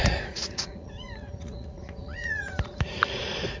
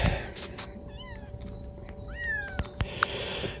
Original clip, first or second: second